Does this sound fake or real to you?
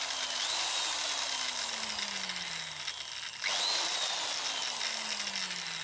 real